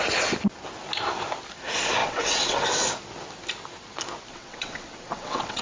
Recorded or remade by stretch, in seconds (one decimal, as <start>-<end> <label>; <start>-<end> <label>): 0.0-2.0 recorded; 2.0-2.6 remade; 2.6-4.3 recorded; 4.3-5.6 remade